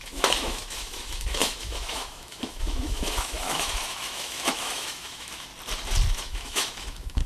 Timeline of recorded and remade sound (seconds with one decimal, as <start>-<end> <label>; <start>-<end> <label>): 0.0-5.5 remade; 5.5-6.1 recorded; 6.1-7.3 remade

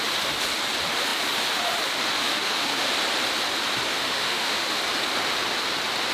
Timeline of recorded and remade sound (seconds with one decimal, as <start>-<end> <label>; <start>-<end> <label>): 0.0-2.2 recorded; 2.2-2.9 remade; 2.9-3.9 recorded; 3.9-4.8 remade; 4.8-6.1 recorded

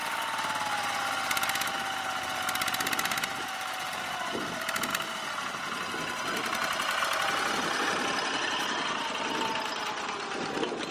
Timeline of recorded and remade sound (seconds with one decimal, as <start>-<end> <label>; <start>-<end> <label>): 0.0-10.9 recorded